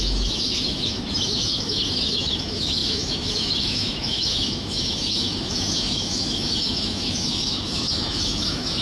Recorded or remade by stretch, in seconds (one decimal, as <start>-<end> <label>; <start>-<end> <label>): 0.0-8.8 remade